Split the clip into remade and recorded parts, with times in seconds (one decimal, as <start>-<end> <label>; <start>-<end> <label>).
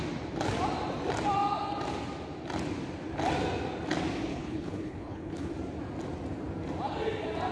0.0-4.3 recorded; 4.3-5.5 remade; 5.5-7.5 recorded